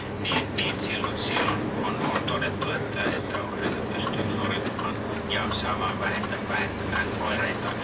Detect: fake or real real